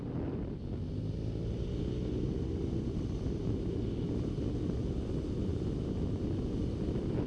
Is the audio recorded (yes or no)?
yes